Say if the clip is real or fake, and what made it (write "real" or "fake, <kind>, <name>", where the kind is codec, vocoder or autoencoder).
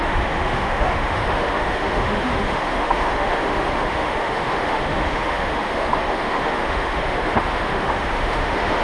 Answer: fake, autoencoder, DAC-VAE